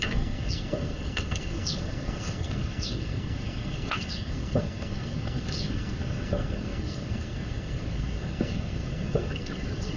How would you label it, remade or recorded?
remade